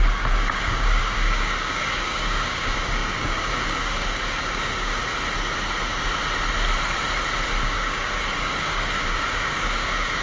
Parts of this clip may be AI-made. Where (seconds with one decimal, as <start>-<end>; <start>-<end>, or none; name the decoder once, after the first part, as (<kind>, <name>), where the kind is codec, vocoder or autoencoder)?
0.0-5.0 (codec, DAC); 7.6-10.2